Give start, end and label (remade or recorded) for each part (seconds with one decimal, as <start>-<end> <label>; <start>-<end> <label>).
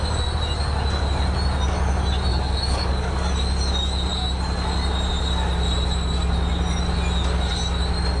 0.0-2.3 recorded; 2.3-3.3 remade; 3.3-8.2 recorded